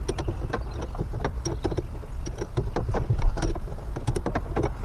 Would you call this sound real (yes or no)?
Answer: yes